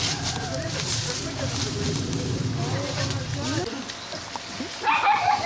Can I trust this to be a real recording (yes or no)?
yes